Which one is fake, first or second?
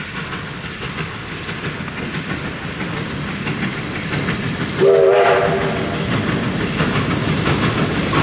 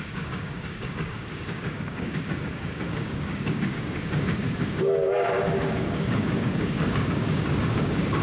second